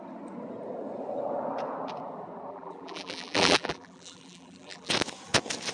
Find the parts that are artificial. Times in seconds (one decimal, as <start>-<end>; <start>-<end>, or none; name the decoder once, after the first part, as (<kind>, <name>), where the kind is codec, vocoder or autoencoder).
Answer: 2.5-4.9 (vocoder, BigVGAN v2)